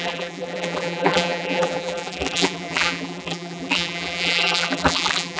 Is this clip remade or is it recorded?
remade